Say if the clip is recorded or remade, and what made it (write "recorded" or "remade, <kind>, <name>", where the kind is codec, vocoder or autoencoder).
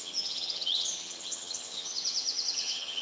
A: remade, vocoder, HiFi-GAN